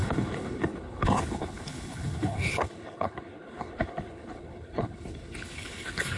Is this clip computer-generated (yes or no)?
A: yes